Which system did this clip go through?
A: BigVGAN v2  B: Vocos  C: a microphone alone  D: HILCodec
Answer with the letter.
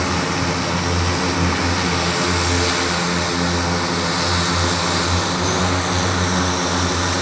C